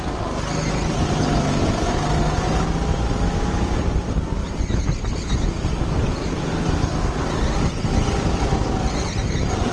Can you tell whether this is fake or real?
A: real